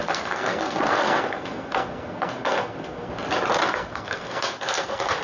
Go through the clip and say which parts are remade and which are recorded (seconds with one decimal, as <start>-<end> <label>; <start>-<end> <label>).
0.0-3.1 remade; 3.1-3.6 recorded; 3.6-5.2 remade